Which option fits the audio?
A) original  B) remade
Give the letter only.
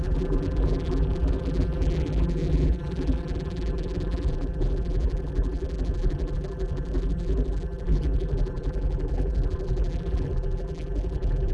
B